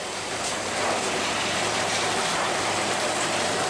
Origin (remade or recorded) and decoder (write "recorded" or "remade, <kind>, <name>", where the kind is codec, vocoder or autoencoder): remade, vocoder, BigVGAN v2